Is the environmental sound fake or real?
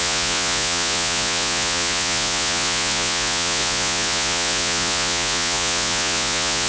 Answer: fake